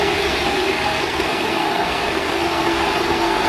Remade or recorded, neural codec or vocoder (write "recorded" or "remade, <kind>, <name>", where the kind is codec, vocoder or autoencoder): remade, codec, SNAC